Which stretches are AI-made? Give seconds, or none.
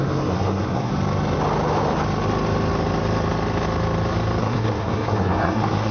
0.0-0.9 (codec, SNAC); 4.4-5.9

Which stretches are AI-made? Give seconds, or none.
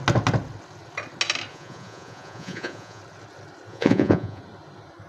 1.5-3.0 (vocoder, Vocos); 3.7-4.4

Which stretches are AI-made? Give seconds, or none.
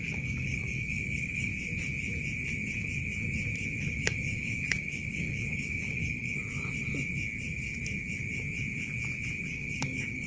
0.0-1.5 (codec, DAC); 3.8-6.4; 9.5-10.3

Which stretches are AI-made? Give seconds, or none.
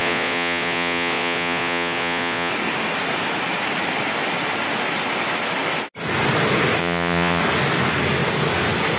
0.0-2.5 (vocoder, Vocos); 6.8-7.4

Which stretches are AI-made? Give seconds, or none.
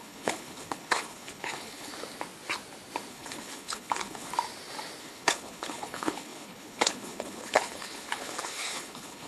0.0-1.9 (codec, HILCodec); 3.1-4.3; 5.0-9.3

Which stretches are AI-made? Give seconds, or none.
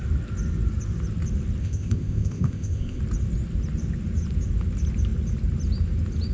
1.6-3.0 (codec, ZipCodec)